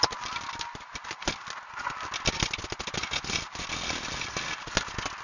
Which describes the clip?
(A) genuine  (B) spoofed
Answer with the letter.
A